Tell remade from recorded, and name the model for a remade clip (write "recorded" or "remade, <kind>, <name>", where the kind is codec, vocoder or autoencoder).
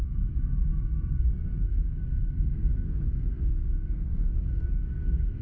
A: remade, codec, SNAC